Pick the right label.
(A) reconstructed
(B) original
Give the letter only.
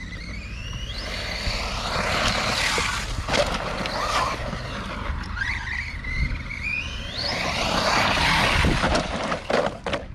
B